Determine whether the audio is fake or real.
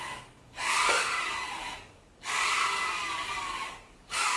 fake